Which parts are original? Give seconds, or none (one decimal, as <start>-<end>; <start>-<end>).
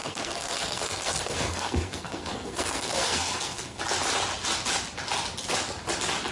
3.8-6.3